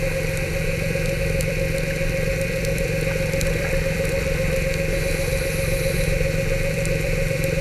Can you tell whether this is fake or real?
fake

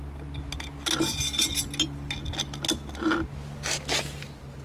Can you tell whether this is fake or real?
real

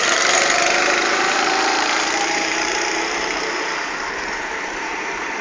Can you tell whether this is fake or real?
fake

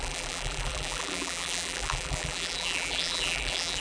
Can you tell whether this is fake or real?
fake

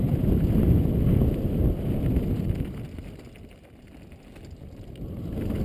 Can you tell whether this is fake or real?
real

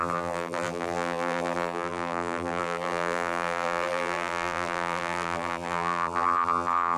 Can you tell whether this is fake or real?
fake